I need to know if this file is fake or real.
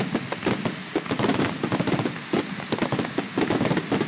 real